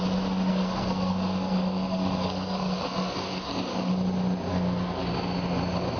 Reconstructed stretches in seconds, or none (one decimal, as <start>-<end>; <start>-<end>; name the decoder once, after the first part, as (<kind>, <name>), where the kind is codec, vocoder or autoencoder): 0.5-3.9 (codec, SNAC); 4.5-5.1